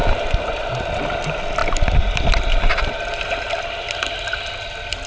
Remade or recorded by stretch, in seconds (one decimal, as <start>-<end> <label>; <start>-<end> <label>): 0.0-5.1 recorded